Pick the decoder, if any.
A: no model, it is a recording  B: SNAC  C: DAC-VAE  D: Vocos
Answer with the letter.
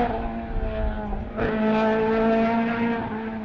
A